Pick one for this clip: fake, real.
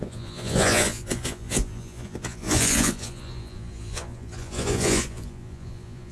fake